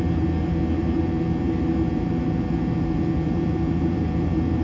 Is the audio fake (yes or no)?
yes